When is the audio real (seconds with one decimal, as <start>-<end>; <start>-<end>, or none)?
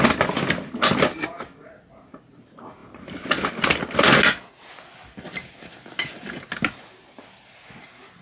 0.0-8.2